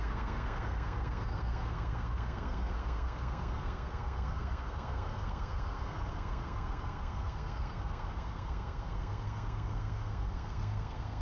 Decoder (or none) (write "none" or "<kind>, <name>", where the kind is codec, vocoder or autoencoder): codec, SNAC